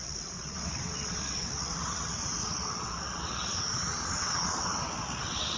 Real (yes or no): no